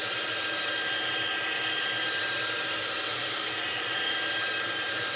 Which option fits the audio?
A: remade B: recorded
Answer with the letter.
B